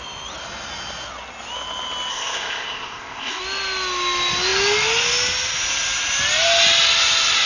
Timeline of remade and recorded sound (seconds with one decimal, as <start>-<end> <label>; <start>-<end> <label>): 0.0-2.1 recorded; 2.1-3.4 remade; 3.4-7.5 recorded